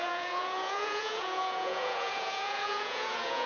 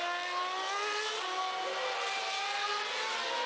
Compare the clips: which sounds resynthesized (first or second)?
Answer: first